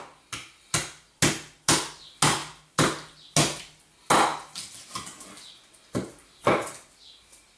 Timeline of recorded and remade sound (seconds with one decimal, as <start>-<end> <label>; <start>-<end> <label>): 0.0-7.6 recorded

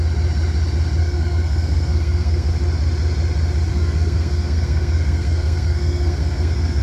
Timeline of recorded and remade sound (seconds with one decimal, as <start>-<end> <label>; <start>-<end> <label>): 0.0-1.0 recorded; 1.0-2.5 remade; 2.5-3.7 recorded; 3.7-6.8 remade